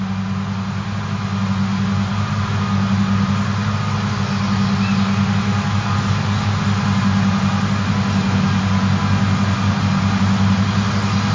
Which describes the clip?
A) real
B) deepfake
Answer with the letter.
A